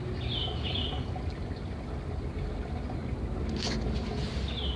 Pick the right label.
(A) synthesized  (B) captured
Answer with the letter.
B